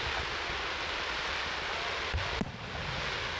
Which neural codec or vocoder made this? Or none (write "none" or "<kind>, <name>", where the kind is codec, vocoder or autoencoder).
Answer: none